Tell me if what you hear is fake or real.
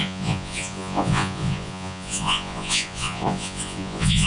fake